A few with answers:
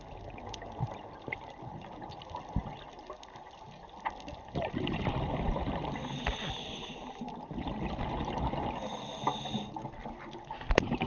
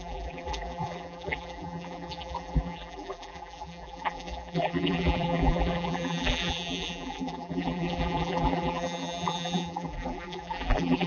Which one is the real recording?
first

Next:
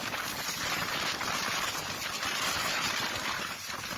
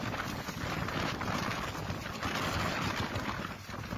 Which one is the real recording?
second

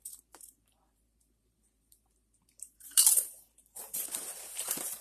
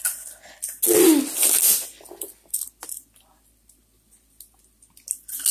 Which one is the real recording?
second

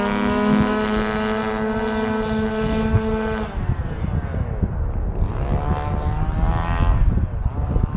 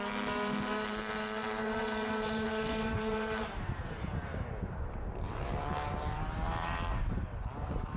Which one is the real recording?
first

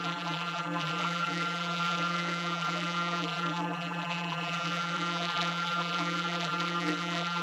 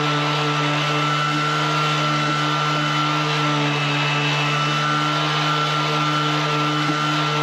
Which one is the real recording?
second